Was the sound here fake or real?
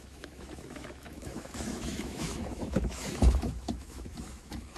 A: fake